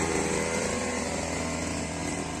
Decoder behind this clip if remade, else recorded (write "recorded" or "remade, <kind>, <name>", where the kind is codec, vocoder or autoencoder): remade, vocoder, BigVGAN v2